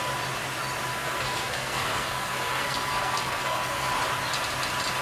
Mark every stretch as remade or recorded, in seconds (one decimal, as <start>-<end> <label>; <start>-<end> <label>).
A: 0.0-0.9 recorded; 0.9-3.9 remade; 3.9-5.0 recorded